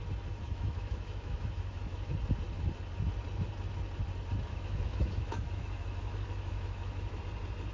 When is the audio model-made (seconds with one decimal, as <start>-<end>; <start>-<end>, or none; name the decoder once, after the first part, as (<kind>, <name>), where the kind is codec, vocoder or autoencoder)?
0.4-2.1 (autoencoder, DAC-VAE); 4.5-7.2